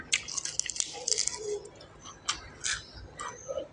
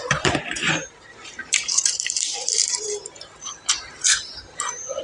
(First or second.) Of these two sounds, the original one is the first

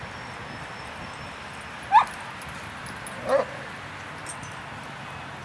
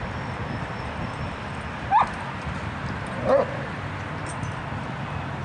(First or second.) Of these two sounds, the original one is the first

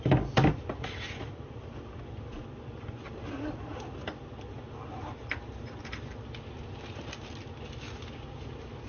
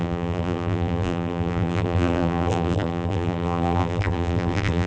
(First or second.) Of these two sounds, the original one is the first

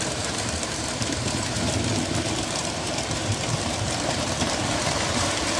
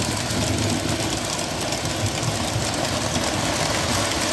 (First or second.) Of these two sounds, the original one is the second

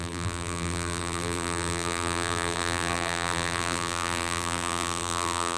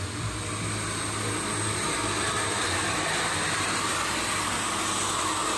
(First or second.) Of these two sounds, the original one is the second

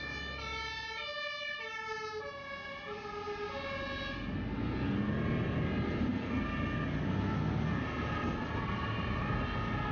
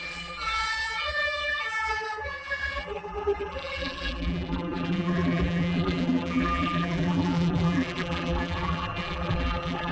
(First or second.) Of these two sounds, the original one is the first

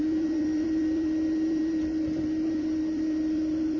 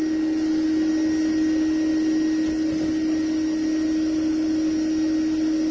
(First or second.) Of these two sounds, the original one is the second